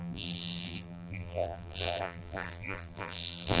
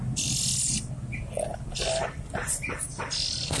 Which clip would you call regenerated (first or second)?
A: first